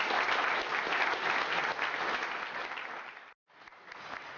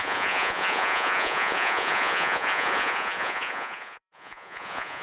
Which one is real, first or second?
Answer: first